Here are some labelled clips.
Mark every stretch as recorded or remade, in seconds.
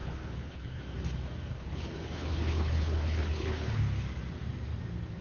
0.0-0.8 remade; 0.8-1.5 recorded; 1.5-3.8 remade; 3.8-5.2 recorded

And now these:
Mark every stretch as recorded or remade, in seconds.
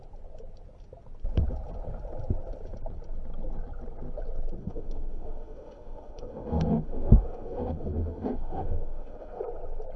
0.0-4.6 recorded; 4.6-9.4 remade; 9.4-10.0 recorded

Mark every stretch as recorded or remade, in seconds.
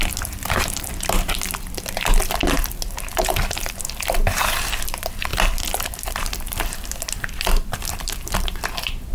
0.0-9.1 recorded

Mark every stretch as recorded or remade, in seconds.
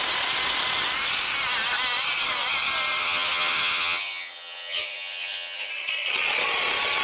0.0-3.0 recorded; 3.0-5.7 remade; 5.7-7.0 recorded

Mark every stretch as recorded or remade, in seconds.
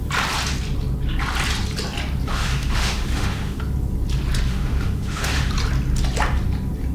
0.0-2.3 recorded; 2.3-3.6 remade; 3.6-4.5 recorded; 4.5-5.5 remade; 5.5-6.9 recorded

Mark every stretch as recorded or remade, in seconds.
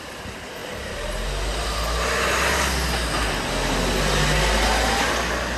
0.0-5.6 recorded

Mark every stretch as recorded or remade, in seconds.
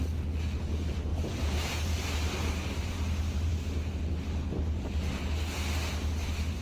0.0-1.1 recorded; 1.1-3.5 remade; 3.5-6.6 recorded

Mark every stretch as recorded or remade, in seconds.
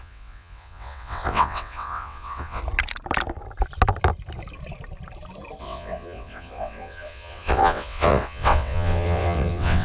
0.0-2.6 remade; 2.6-5.6 recorded; 5.6-9.8 remade